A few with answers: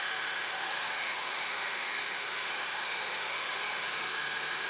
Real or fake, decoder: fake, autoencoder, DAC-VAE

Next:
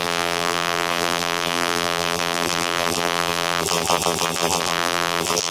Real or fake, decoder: fake, vocoder, BigVGAN v2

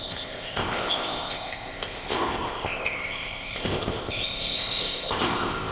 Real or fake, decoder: fake, codec, ZipCodec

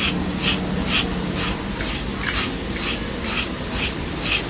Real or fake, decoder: real